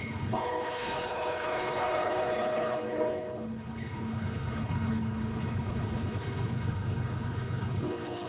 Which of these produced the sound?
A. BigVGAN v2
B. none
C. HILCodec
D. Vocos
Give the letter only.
C